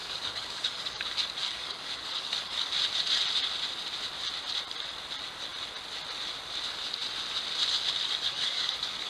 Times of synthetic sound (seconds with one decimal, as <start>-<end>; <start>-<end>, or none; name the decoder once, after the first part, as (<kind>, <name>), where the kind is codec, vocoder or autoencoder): 0.0-1.0 (codec, DAC); 1.4-2.7; 8.0-9.1